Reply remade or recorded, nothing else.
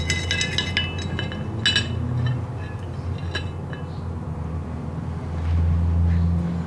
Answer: recorded